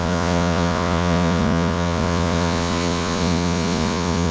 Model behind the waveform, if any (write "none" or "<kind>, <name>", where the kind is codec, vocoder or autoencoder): vocoder, Vocos